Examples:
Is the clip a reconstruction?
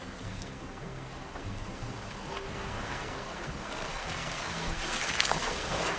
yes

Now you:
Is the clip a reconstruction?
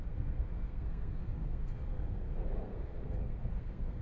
yes